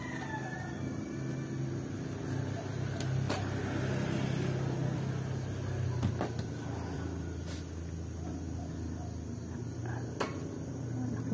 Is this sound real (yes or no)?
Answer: yes